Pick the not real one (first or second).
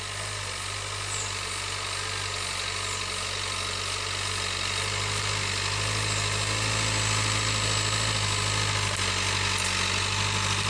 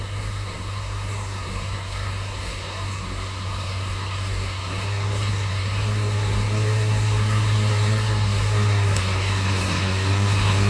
second